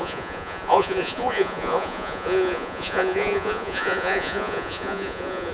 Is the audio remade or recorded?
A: remade